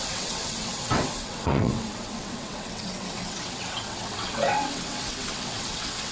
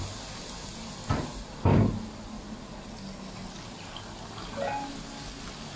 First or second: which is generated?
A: first